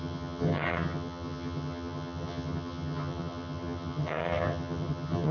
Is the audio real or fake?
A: fake